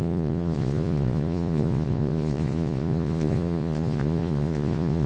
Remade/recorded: remade